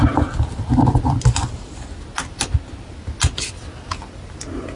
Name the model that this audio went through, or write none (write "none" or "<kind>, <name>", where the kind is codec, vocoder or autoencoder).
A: none